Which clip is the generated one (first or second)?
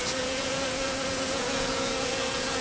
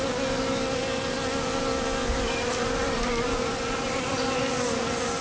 first